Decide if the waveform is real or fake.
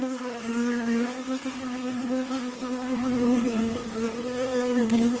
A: fake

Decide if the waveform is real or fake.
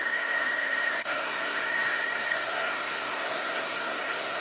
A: fake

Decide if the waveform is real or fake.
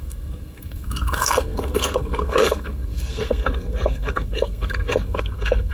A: fake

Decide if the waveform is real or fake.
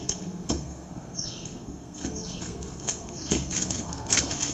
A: fake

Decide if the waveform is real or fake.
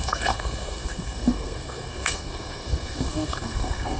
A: fake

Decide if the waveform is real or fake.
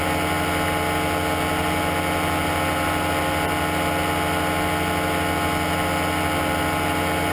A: real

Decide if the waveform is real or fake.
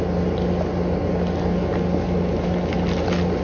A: real